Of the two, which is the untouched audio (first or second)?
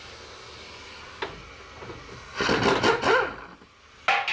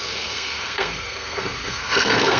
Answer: first